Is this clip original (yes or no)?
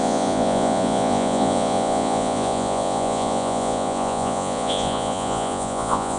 no